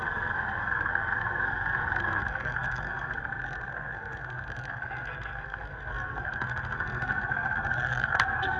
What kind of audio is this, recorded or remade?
remade